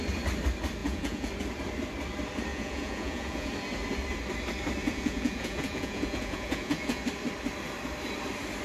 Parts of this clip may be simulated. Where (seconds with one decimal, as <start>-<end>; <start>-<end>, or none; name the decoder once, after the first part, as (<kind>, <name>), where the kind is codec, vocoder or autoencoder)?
0.8-1.3 (vocoder, Vocos); 2.5-3.5; 4.8-7.0